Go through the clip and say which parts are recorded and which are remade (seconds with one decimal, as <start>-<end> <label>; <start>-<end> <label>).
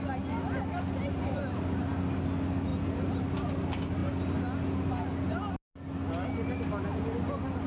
0.0-1.2 recorded; 1.2-1.9 remade; 1.9-2.7 recorded; 2.7-3.2 remade; 3.2-7.7 recorded